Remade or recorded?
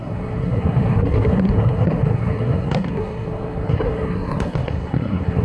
remade